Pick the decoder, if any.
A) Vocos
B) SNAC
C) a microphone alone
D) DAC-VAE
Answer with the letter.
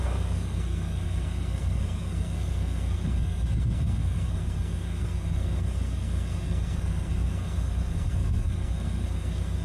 B